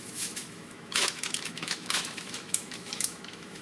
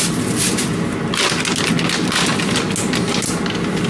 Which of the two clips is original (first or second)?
second